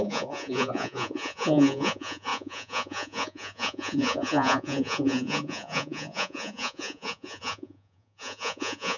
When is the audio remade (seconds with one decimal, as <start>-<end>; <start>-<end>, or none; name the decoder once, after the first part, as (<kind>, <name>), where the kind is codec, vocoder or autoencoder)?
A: 0.0-9.0 (vocoder, Vocos)